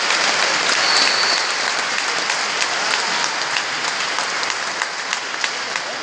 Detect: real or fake real